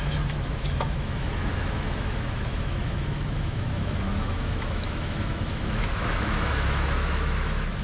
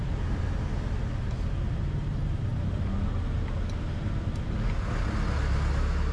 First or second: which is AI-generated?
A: first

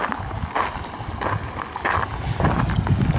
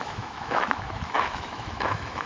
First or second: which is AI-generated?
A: second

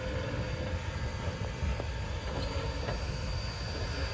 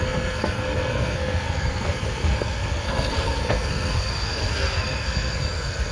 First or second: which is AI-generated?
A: second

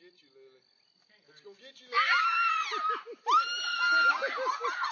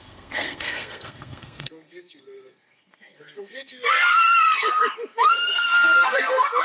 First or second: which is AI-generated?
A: second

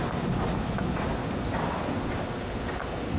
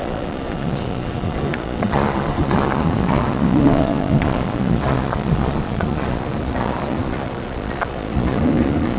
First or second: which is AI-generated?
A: second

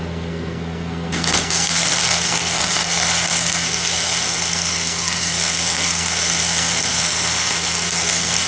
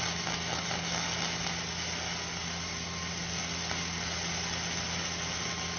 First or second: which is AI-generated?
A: first